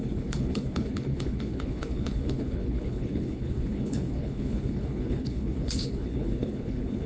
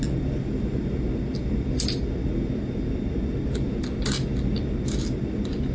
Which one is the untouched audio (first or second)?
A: second